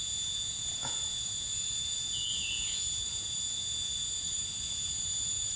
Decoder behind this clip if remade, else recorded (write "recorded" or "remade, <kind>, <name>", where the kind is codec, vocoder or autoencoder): remade, vocoder, Vocos